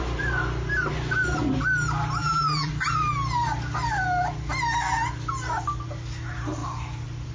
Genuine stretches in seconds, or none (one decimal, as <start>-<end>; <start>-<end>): 0.0-2.2; 2.7-7.3